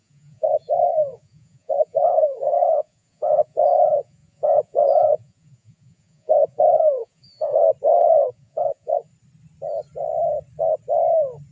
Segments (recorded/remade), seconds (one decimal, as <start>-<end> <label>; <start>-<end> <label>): 0.0-7.6 remade; 7.6-8.3 recorded; 8.3-9.1 remade; 9.1-11.5 recorded

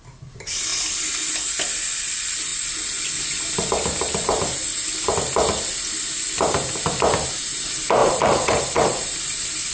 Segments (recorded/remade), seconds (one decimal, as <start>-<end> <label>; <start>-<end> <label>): 0.0-0.7 recorded; 0.7-1.3 remade; 1.3-8.0 recorded; 8.0-9.7 remade

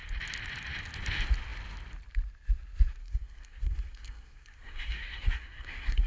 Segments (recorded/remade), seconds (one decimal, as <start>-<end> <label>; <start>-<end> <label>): 0.0-3.0 recorded; 3.0-6.1 remade

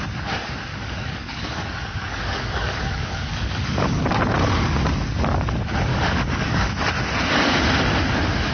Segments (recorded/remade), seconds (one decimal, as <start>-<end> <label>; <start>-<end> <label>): 0.0-0.7 recorded; 0.7-4.0 remade; 4.0-5.9 recorded; 5.9-6.7 remade; 6.7-8.5 recorded

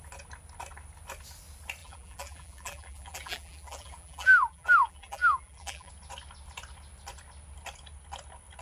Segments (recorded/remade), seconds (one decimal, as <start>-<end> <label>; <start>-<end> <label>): 0.0-1.8 recorded; 1.8-5.9 remade; 5.9-8.6 recorded

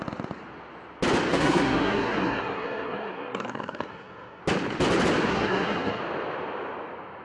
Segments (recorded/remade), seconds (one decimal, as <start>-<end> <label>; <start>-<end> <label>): 0.0-1.3 recorded; 1.3-4.4 remade; 4.4-5.3 recorded; 5.3-6.0 remade; 6.0-7.2 recorded

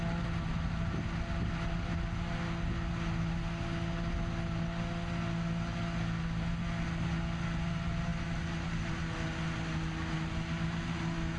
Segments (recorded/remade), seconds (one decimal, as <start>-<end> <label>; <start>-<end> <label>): 0.0-11.4 recorded

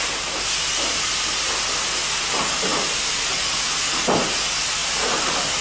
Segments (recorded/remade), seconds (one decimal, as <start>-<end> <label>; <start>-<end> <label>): 0.0-2.7 recorded; 2.7-3.7 remade; 3.7-4.8 recorded; 4.8-5.6 remade